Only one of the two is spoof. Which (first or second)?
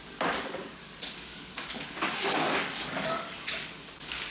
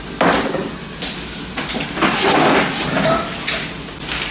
first